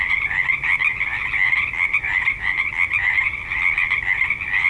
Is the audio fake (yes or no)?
no